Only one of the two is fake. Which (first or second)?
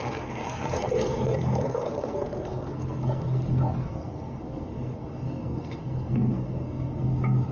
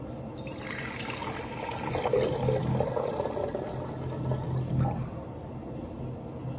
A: first